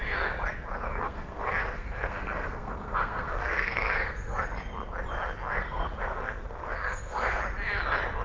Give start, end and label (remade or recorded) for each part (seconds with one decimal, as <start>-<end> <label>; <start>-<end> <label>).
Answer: 0.0-0.9 recorded; 0.9-4.4 remade; 4.4-5.5 recorded; 5.5-7.4 remade; 7.4-8.2 recorded